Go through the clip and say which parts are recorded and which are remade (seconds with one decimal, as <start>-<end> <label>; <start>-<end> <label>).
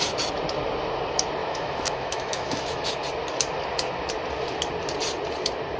0.0-1.4 recorded; 1.4-2.9 remade; 2.9-5.8 recorded